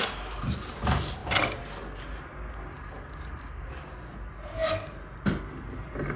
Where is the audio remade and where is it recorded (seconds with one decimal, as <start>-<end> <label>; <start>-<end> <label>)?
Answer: 0.0-6.2 recorded